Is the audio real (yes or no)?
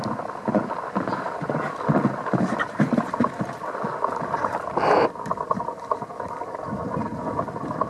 no